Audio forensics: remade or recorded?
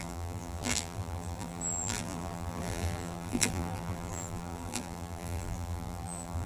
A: remade